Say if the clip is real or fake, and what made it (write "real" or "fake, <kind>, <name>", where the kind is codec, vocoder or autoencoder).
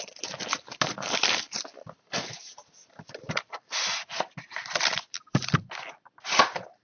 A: real